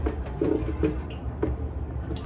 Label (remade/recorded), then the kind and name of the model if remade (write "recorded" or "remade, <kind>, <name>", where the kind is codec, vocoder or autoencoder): recorded